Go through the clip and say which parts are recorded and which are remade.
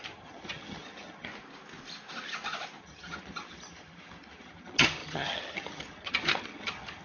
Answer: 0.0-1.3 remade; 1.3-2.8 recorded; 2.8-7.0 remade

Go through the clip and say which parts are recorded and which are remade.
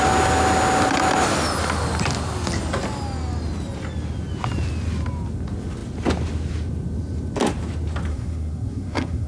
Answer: 0.0-8.1 recorded; 8.1-9.3 remade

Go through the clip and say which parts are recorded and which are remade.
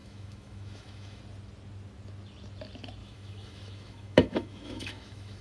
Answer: 0.0-1.2 remade; 1.2-3.0 recorded; 3.0-5.4 remade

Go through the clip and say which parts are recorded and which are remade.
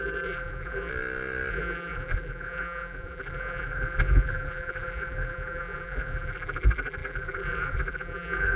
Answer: 0.0-0.9 remade; 0.9-1.5 recorded; 1.5-8.6 remade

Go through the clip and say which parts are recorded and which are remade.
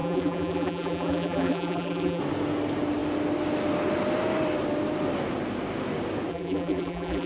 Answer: 0.0-2.2 remade; 2.2-6.3 recorded; 6.3-7.3 remade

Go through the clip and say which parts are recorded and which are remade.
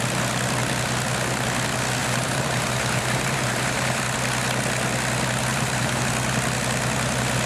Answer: 0.0-2.0 recorded; 2.0-4.0 remade; 4.0-5.5 recorded; 5.5-6.1 remade; 6.1-7.5 recorded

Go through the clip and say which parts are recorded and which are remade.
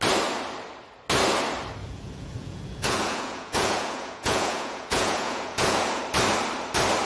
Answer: 0.0-1.8 recorded; 1.8-6.0 remade; 6.0-7.1 recorded